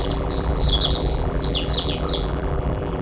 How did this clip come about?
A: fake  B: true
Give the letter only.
A